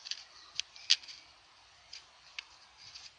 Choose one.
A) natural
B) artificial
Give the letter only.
A